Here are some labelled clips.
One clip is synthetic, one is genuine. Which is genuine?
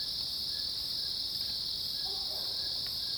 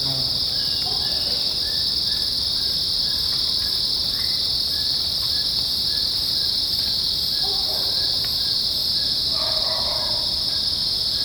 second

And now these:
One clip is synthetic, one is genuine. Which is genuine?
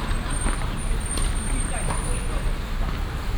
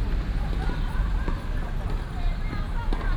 second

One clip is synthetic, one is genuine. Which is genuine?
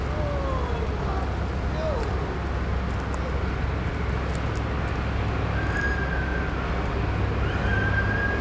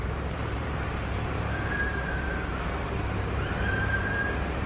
first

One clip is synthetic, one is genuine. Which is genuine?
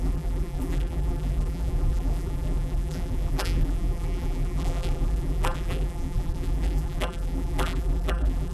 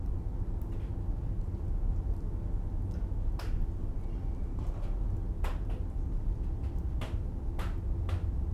second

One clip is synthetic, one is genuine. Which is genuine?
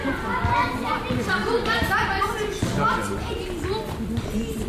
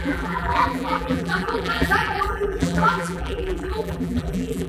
first